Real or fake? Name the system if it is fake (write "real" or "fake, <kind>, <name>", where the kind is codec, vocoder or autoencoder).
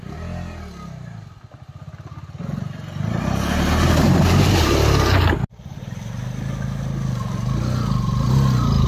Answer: real